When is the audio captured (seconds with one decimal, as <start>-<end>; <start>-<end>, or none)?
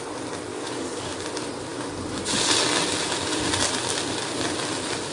0.0-0.5; 1.1-5.1